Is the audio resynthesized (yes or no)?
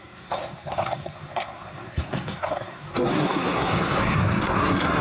yes